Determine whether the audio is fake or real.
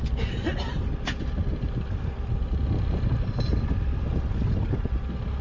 real